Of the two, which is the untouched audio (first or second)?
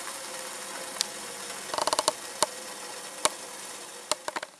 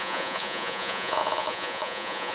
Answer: first